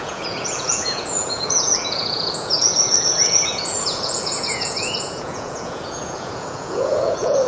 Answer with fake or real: fake